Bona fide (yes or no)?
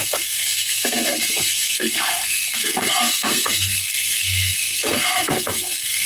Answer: no